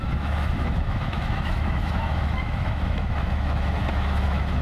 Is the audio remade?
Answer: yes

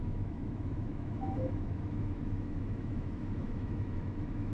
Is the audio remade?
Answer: yes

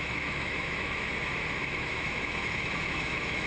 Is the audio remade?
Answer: yes